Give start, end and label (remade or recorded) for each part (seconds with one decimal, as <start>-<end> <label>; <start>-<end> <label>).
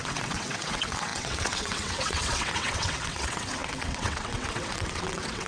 0.0-5.5 remade